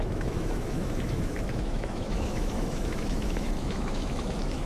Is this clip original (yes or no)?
no